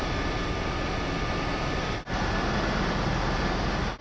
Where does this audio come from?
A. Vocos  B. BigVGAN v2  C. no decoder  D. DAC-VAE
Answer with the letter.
C